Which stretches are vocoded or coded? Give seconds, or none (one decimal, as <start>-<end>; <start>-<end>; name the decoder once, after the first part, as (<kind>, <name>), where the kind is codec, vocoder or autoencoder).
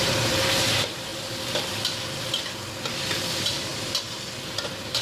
0.0-1.1 (vocoder, BigVGAN v2); 3.2-3.7; 4.6-5.0